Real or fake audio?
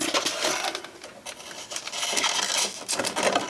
real